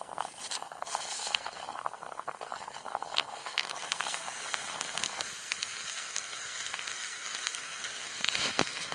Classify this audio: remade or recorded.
remade